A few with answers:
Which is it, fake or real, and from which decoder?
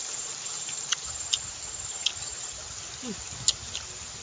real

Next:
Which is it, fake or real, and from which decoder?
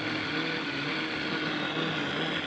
real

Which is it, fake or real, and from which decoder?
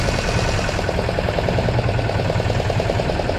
real